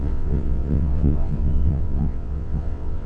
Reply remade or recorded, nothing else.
remade